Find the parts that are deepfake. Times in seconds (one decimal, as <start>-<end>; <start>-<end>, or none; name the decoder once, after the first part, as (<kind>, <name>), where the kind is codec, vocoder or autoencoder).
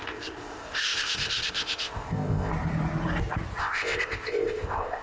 0.0-2.5 (codec, ZipCodec); 3.6-5.0